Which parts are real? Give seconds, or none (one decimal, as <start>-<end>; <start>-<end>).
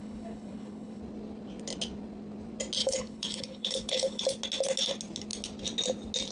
1.0-2.8; 4.2-6.3